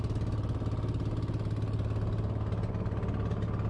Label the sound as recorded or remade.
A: recorded